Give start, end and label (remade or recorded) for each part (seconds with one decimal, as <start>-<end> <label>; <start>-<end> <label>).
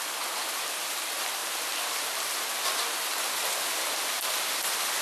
0.0-5.0 recorded